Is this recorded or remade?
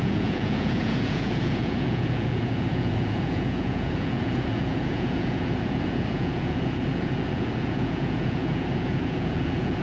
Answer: remade